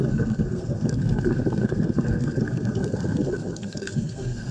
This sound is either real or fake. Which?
fake